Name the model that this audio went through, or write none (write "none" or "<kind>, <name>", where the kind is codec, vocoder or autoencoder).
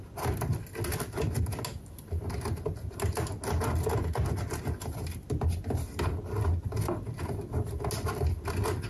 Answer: none